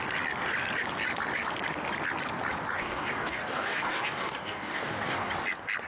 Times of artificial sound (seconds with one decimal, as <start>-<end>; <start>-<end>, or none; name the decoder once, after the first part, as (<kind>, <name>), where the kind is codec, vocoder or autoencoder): 2.7-5.3 (codec, DAC)